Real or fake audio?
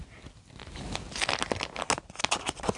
real